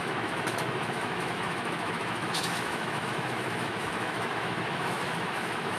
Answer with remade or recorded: remade